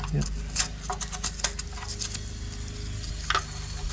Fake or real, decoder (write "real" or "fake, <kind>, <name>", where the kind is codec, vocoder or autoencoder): real